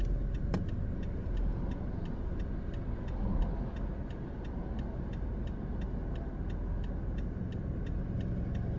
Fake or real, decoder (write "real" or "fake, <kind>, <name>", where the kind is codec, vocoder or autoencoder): real